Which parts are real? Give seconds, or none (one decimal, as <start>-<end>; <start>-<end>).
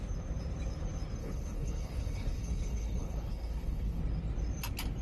0.0-1.2; 4.0-5.0